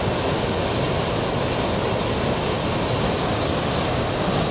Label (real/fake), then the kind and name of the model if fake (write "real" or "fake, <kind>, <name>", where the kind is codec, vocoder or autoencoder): real